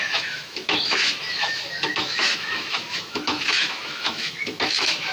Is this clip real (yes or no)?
no